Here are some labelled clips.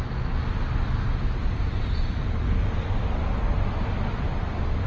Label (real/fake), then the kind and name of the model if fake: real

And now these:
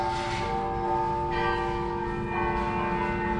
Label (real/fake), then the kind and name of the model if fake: real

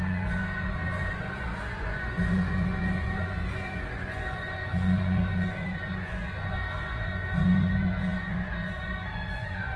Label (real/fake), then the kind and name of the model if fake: fake, vocoder, Vocos